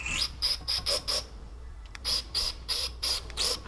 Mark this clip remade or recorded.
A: remade